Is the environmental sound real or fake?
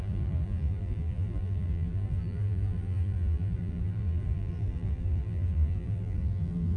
fake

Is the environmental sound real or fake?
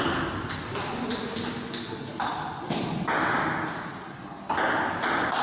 real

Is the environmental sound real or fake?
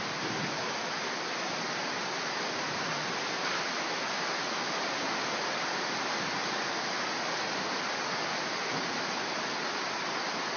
real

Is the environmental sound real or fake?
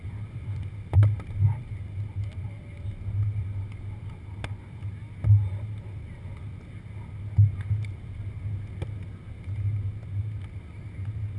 real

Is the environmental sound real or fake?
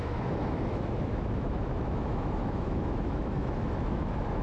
fake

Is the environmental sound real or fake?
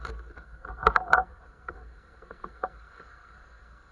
fake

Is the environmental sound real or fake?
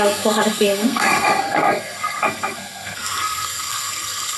fake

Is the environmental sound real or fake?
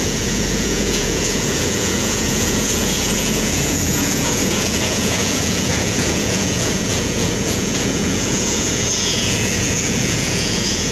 fake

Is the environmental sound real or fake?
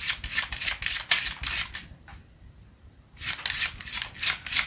real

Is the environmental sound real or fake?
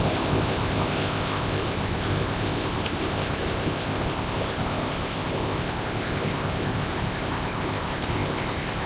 fake